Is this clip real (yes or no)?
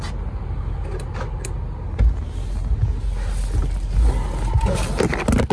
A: yes